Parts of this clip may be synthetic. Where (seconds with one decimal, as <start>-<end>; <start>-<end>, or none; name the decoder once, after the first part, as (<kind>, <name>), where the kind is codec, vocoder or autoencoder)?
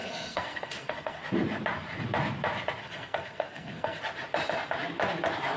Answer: 0.0-1.2 (codec, SNAC); 2.8-4.0